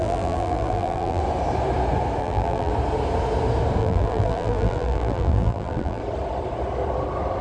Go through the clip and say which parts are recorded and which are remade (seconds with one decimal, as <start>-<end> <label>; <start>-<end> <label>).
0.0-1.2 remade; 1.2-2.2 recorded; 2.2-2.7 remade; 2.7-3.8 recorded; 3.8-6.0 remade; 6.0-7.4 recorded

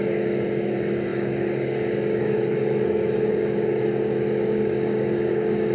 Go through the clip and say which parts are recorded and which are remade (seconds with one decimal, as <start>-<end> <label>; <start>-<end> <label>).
0.0-5.7 remade

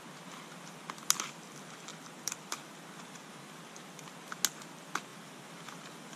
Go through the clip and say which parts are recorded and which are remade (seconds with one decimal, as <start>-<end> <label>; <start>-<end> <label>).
0.0-1.9 recorded; 1.9-4.0 remade; 4.0-5.1 recorded; 5.1-6.2 remade

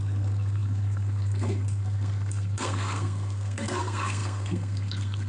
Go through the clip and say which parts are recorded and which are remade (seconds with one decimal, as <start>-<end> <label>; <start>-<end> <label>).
0.0-5.3 remade

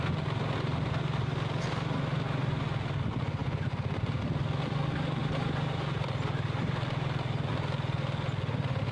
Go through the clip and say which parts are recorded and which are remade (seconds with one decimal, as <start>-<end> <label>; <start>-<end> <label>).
0.0-3.4 recorded; 3.4-4.2 remade; 4.2-5.2 recorded; 5.2-6.7 remade; 6.7-8.9 recorded

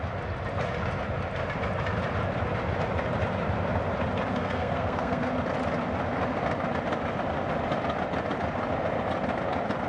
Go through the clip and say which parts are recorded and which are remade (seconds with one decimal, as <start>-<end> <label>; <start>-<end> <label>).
0.0-4.3 recorded; 4.3-5.3 remade; 5.3-9.9 recorded